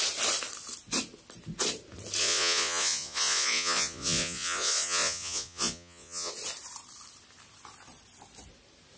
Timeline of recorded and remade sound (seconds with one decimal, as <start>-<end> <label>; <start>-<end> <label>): 0.0-2.2 recorded; 2.2-6.3 remade; 6.3-9.0 recorded